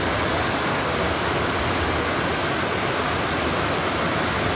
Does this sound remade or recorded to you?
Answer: recorded